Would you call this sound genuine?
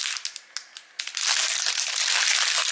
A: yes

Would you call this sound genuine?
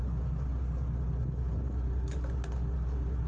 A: yes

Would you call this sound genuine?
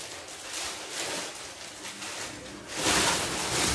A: yes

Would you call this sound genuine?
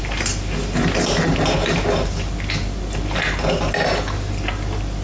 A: yes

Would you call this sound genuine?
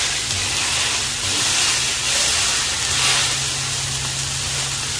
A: yes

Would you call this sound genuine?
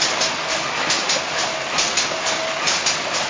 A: yes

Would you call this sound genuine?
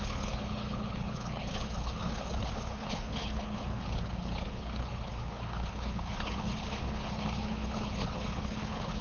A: no